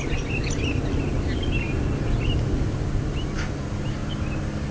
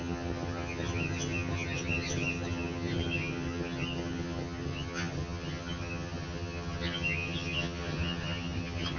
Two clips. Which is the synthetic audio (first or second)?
second